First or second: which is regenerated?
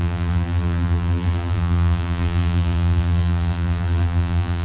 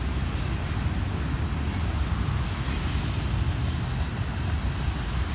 first